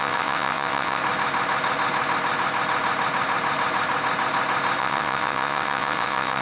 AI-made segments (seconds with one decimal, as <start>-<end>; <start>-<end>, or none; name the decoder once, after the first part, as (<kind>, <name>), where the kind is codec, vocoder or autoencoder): 0.0-1.0 (vocoder, WaveNeXt); 4.8-6.4